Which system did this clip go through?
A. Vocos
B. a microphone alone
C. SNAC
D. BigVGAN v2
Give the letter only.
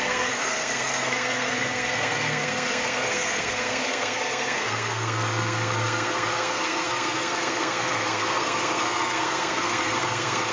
C